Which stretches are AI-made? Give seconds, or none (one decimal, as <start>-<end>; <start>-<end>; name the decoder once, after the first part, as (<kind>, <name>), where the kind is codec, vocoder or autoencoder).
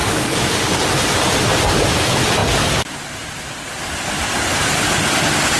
0.0-0.8 (codec, DAC)